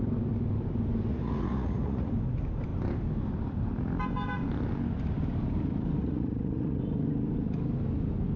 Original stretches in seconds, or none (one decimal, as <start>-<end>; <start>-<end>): 0.0-1.1; 2.1-6.0; 6.8-8.4